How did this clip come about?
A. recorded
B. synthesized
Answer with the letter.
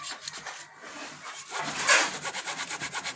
A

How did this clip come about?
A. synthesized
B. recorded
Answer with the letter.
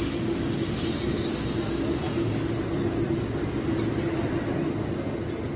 B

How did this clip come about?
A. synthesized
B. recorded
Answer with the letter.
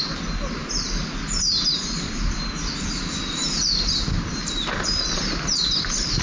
B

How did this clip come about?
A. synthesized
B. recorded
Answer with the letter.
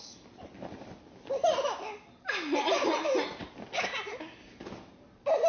B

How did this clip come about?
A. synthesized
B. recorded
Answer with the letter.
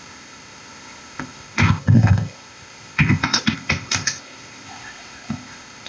A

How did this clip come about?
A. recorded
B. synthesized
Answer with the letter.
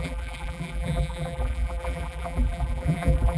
B